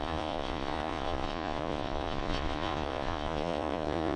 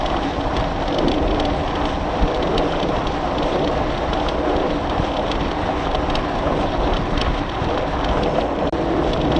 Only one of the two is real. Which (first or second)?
second